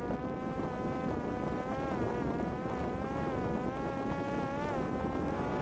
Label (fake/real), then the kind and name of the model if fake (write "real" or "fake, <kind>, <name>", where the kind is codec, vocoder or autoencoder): real